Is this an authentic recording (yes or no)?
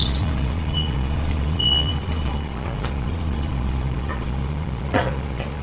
no